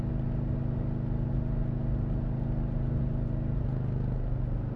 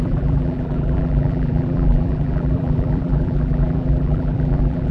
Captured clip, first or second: first